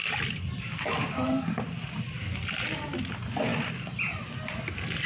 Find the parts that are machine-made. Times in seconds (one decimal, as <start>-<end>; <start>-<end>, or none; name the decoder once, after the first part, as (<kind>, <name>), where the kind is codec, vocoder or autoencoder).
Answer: 0.0-3.1 (vocoder, BigVGAN v2)